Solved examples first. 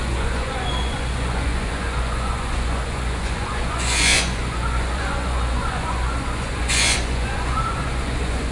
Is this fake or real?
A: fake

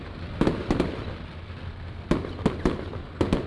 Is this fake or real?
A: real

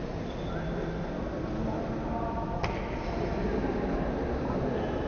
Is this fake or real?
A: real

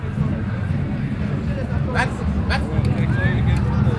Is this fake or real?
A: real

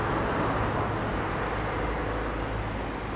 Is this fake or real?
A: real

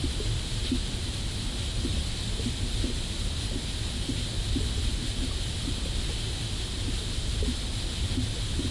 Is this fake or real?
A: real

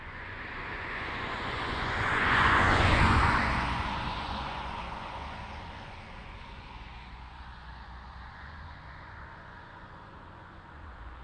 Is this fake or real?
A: fake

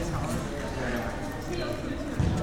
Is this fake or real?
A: real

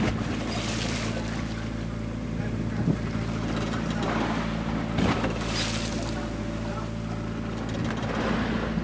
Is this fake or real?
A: real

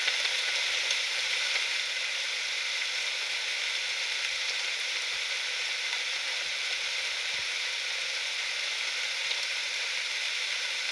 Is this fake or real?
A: real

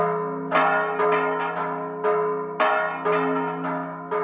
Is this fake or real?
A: real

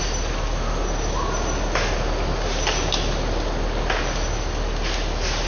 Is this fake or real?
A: real